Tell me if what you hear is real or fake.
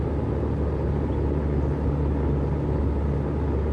real